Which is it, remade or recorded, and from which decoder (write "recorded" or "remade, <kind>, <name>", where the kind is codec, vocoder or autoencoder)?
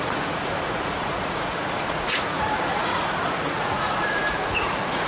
remade, vocoder, Vocos